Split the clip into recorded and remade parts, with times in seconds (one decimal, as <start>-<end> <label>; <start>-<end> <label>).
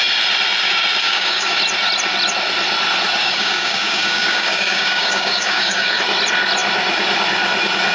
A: 0.0-1.0 recorded; 1.0-1.6 remade; 1.6-3.2 recorded; 3.2-6.0 remade; 6.0-7.9 recorded